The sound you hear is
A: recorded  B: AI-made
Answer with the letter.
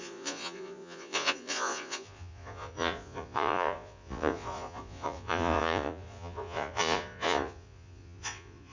B